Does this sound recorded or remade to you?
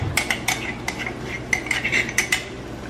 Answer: recorded